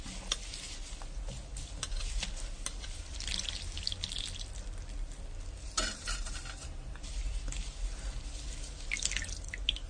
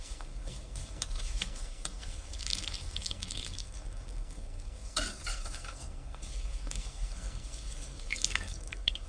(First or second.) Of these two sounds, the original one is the first